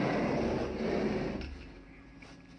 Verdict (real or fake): real